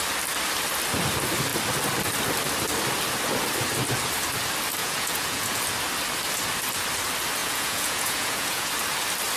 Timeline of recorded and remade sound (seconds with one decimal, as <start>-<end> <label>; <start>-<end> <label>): 0.0-4.8 recorded; 4.8-5.6 remade; 5.6-7.4 recorded; 7.4-8.7 remade; 8.7-9.4 recorded